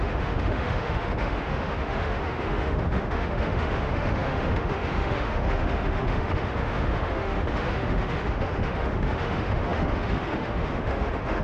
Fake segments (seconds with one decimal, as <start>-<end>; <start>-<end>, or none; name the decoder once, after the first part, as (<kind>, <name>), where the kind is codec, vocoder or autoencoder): 0.0-11.4 (autoencoder, DAC-VAE)